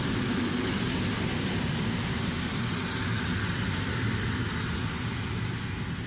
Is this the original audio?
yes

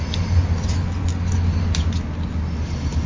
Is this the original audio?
yes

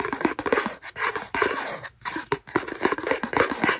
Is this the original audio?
yes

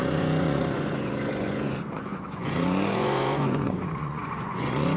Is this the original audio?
no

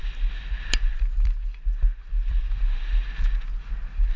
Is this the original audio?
yes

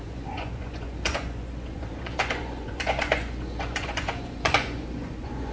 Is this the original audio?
no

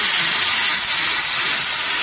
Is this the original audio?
yes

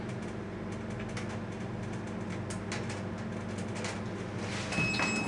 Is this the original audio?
yes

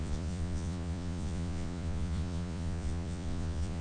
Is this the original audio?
no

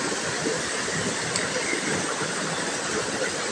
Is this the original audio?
yes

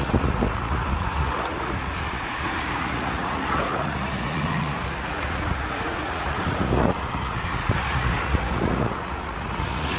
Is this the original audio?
no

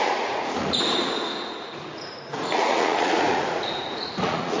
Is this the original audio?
no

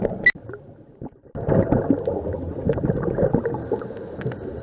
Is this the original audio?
yes